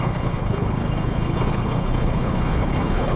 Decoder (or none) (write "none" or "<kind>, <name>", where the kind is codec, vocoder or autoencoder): codec, HILCodec